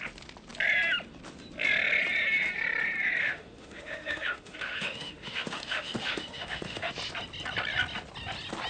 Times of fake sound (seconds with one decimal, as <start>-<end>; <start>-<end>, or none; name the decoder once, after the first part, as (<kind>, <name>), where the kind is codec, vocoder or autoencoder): 3.2-6.9 (autoencoder, DAC-VAE)